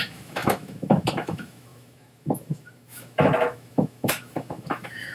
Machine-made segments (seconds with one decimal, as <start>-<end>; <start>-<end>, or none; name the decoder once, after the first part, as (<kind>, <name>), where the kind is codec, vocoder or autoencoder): 0.0-5.1 (autoencoder, DAC-VAE)